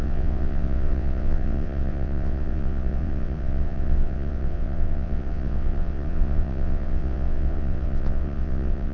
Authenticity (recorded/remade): remade